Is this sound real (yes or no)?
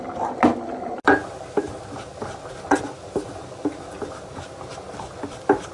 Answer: yes